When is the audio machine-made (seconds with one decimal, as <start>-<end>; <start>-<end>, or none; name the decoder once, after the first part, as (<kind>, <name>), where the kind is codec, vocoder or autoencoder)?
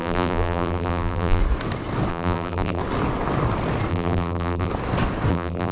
0.0-1.4 (vocoder, BigVGAN v2); 2.1-2.8; 3.9-4.7; 5.3-5.7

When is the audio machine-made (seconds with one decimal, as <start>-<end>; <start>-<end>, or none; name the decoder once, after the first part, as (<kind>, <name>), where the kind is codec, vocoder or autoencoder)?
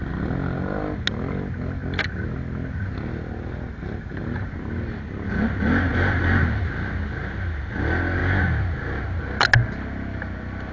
none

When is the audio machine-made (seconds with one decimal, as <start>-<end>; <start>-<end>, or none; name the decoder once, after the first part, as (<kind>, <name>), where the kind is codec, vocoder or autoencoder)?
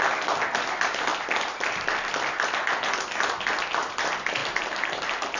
4.4-5.4 (vocoder, BigVGAN v2)